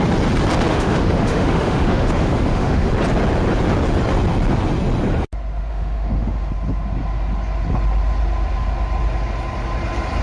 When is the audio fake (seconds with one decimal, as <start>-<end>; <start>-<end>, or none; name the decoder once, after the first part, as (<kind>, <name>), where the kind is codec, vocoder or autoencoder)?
0.7-2.9 (autoencoder, DAC-VAE); 5.7-6.5